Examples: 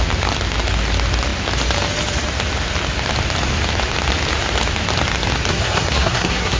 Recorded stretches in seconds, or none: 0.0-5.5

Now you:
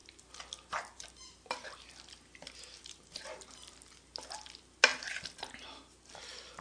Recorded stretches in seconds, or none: 0.0-6.6

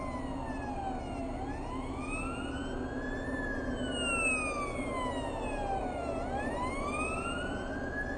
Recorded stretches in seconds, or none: 0.0-8.2

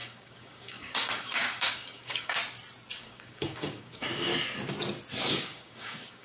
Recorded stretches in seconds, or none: 2.4-3.0; 4.3-5.3

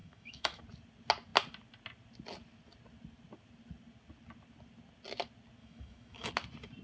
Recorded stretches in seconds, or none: 0.6-5.6; 6.3-6.8

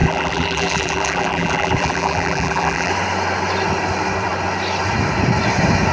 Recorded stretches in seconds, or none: 2.9-5.9